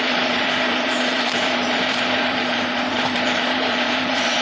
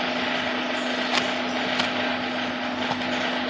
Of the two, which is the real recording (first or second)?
second